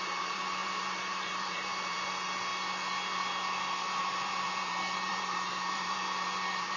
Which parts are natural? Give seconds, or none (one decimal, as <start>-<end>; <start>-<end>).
2.5-4.0